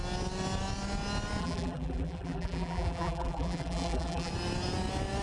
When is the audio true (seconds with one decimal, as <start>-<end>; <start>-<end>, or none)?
0.0-1.4; 4.3-5.2